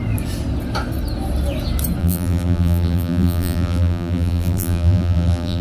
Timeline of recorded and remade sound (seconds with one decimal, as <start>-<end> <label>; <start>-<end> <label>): 0.0-2.0 recorded; 2.0-5.6 remade